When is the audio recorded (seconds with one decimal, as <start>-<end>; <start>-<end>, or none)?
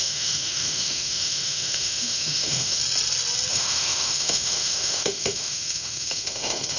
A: 2.8-3.5